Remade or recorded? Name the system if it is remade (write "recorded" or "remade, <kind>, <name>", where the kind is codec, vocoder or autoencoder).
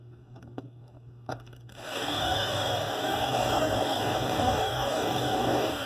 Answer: remade, codec, DAC